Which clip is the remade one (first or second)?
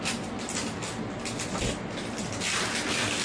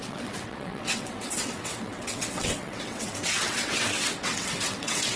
second